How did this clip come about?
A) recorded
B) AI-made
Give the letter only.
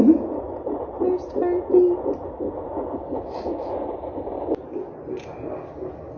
A